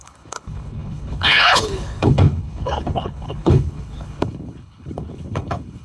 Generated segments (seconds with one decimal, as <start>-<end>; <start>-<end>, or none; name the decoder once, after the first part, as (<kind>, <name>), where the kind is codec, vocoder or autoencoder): 0.0-5.8 (codec, HILCodec)